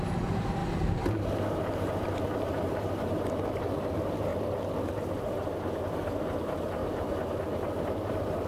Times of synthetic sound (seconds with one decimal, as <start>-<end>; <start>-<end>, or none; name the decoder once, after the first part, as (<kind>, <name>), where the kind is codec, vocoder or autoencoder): 0.0-4.3 (vocoder, BigVGAN v2); 5.2-8.5